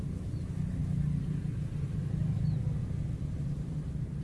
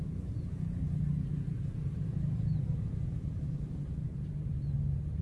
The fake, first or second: second